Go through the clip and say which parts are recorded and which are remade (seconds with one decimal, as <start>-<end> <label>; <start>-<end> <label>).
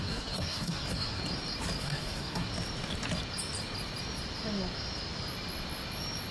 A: 0.0-1.2 remade; 1.2-1.8 recorded; 1.8-2.5 remade; 2.5-6.3 recorded